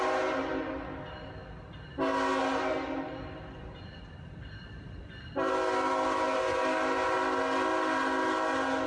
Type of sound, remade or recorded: recorded